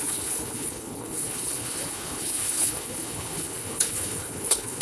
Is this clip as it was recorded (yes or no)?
no